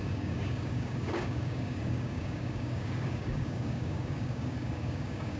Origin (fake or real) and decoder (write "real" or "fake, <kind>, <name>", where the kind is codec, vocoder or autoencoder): fake, codec, DAC